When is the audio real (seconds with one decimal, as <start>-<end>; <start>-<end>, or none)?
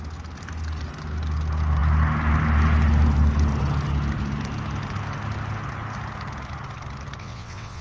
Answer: 0.0-7.2